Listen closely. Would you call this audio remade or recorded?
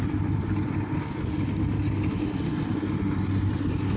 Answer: recorded